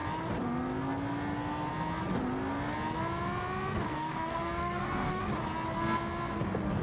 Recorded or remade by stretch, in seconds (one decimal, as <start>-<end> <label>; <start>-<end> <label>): 0.0-3.9 recorded; 3.9-5.2 remade; 5.2-6.8 recorded